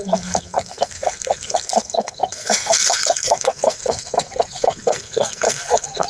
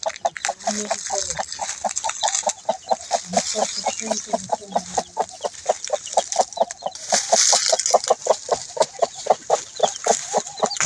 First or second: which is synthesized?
first